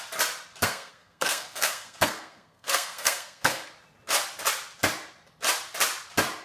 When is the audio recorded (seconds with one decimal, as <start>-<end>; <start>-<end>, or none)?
0.0-0.6; 3.7-6.4